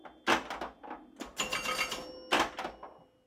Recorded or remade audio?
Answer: recorded